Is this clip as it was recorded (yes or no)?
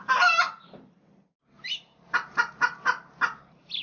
yes